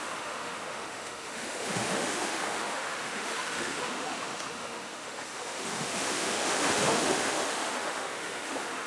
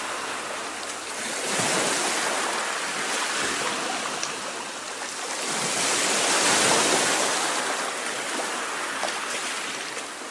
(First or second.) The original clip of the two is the second